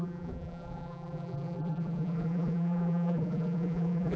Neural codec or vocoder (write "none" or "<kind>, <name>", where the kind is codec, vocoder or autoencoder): vocoder, BigVGAN v2